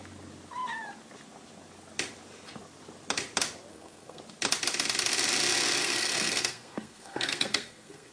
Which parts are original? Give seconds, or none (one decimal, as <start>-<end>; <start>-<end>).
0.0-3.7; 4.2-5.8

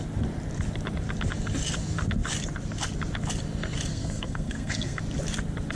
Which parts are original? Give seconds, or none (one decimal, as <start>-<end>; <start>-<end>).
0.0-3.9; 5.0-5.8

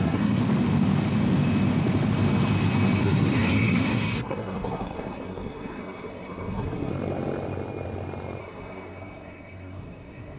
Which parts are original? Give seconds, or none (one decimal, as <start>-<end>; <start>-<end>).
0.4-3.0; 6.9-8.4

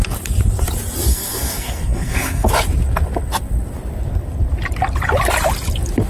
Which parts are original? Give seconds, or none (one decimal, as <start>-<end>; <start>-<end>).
0.0-1.1; 2.5-6.1

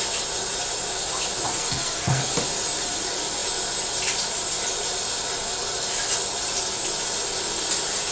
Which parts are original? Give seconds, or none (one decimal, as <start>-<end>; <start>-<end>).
0.0-1.5; 2.3-8.1

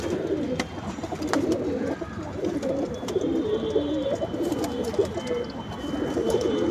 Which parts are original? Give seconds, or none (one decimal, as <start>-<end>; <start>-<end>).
0.0-6.7

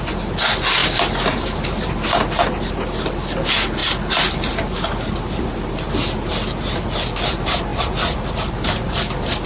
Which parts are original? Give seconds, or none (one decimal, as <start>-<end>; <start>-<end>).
0.0-9.5